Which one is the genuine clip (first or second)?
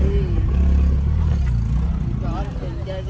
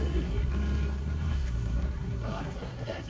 first